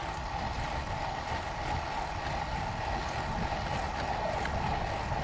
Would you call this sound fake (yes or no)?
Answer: no